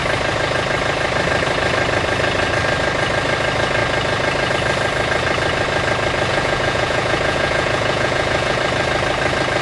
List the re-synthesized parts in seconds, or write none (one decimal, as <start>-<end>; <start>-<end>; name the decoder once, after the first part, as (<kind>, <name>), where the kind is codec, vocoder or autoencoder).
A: 6.3-8.6 (vocoder, Vocos)